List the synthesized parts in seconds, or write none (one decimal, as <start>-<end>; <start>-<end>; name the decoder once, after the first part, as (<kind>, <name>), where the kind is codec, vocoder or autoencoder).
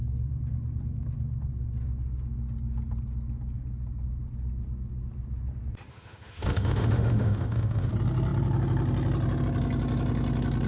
5.9-7.9 (autoencoder, DAC-VAE)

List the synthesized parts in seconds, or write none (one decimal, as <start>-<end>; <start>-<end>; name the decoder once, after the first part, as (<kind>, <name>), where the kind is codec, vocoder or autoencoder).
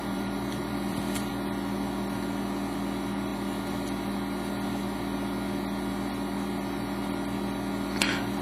0.0-1.3 (vocoder, BigVGAN v2)